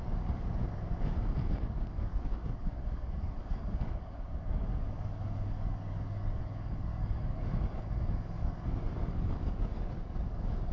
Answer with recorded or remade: remade